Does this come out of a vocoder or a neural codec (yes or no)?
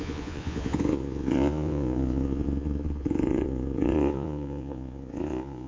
yes